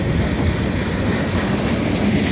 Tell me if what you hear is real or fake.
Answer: real